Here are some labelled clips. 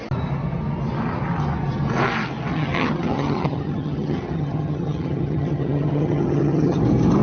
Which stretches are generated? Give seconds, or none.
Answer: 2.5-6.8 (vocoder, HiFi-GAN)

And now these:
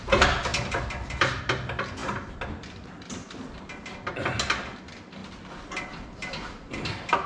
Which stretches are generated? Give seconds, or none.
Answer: 0.5-1.4 (vocoder, BigVGAN v2)

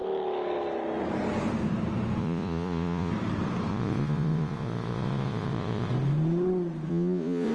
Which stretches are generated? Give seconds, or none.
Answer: 2.2-3.1 (vocoder, Vocos); 3.7-5.9; 6.9-7.5

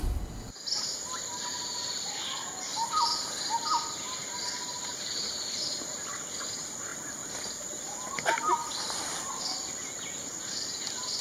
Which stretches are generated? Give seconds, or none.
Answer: 2.7-3.4 (vocoder, BigVGAN v2); 6.9-8.1; 8.6-9.3

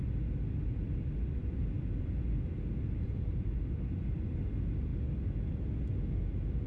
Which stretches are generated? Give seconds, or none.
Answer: 1.4-4.0 (vocoder, BigVGAN v2)

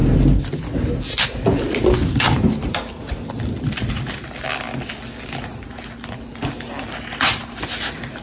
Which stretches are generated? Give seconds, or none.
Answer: none